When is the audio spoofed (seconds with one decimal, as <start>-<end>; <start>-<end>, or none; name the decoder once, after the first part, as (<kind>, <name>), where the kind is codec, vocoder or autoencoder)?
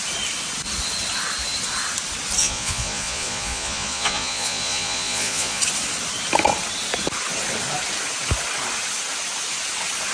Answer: 2.4-5.6 (vocoder, Vocos)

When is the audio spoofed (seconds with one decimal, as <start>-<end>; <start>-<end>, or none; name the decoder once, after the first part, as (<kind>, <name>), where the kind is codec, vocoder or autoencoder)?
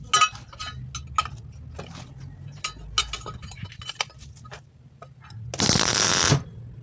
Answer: none